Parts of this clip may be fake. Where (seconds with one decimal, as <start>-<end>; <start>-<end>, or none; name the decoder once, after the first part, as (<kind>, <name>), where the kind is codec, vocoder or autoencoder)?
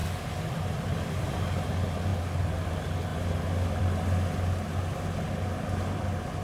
none